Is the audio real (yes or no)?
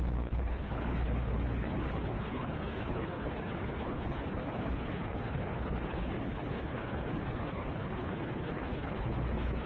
no